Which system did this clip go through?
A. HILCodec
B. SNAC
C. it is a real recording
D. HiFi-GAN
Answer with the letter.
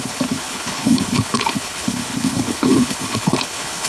A